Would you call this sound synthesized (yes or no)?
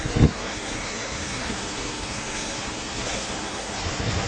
yes